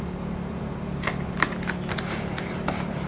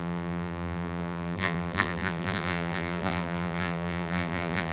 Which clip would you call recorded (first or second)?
first